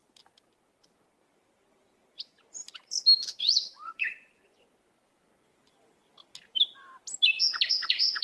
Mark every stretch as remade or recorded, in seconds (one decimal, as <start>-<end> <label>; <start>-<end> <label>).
0.0-3.4 recorded; 3.4-5.3 remade; 5.3-7.7 recorded; 7.7-8.2 remade